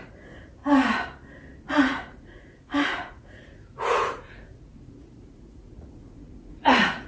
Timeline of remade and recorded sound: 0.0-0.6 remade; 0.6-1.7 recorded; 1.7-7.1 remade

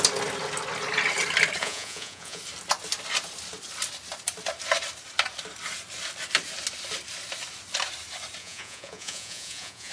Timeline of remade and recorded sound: 0.0-1.6 recorded; 1.6-2.4 remade; 2.4-8.4 recorded; 8.4-9.9 remade

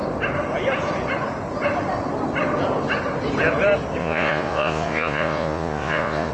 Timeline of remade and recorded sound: 0.0-4.0 recorded; 4.0-6.3 remade

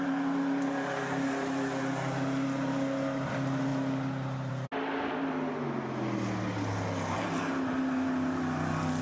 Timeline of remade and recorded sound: 0.0-9.0 recorded

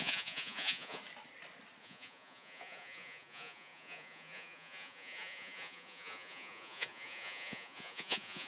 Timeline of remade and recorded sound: 0.0-1.0 remade; 1.0-1.8 recorded; 1.8-8.5 remade

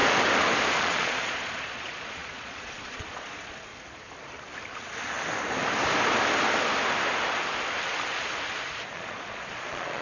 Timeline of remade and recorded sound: 0.0-0.8 recorded; 0.8-3.7 remade; 3.7-8.9 recorded; 8.9-10.0 remade